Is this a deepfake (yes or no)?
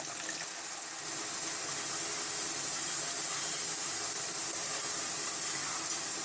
no